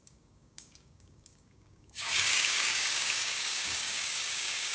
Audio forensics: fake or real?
fake